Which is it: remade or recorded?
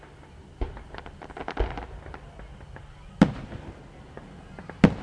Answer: recorded